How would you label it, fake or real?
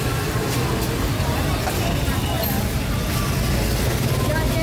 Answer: real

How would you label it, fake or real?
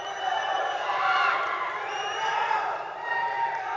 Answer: fake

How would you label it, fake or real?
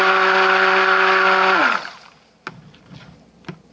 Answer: real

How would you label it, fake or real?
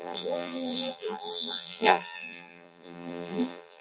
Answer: fake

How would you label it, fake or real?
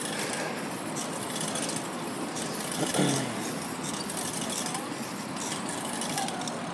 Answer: real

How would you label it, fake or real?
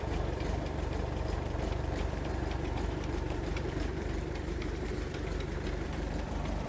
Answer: fake